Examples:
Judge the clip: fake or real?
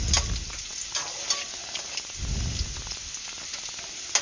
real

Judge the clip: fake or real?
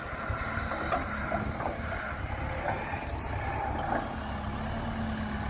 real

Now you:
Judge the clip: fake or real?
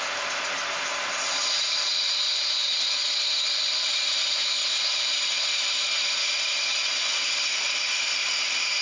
fake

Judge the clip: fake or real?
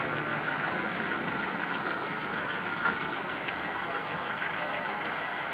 fake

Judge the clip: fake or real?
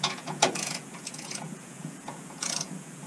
fake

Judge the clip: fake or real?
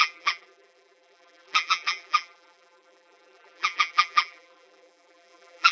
fake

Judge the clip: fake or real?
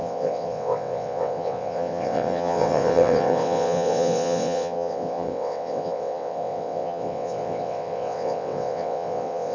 fake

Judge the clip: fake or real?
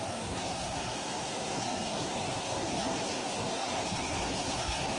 fake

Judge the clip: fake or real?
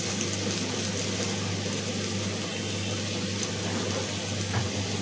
real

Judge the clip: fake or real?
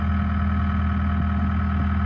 real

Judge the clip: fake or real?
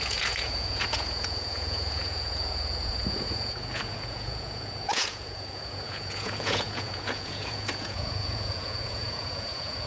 fake